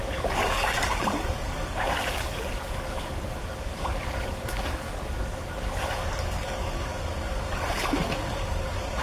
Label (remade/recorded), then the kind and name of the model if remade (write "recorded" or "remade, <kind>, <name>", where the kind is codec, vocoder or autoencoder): remade, codec, DAC